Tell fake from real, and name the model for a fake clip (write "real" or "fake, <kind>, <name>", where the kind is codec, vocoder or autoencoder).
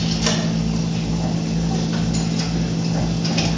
real